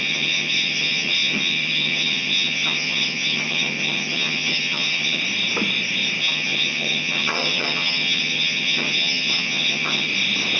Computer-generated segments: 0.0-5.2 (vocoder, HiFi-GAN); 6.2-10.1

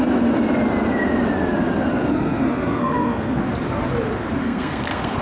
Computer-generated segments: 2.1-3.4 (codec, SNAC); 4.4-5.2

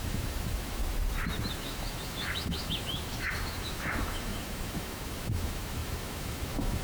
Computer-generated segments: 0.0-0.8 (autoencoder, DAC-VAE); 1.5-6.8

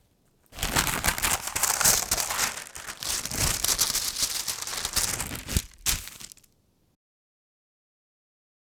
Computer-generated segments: none

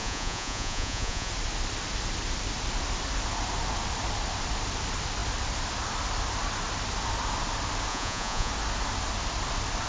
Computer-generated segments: 0.0-1.3 (vocoder, Vocos); 7.9-8.5

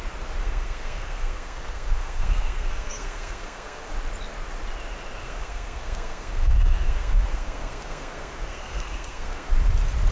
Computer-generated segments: 0.4-3.9 (codec, SNAC); 5.2-9.5

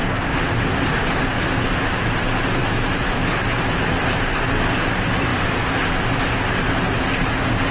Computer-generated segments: 2.6-3.4 (autoencoder, DAC-VAE)